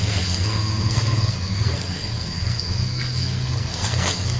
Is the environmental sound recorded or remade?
remade